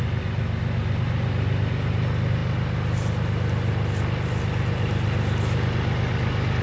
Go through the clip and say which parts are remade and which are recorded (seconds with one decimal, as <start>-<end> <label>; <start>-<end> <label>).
0.0-6.6 recorded